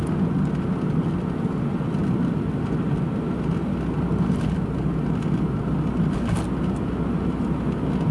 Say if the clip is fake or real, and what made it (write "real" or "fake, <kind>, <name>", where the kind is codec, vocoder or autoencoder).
real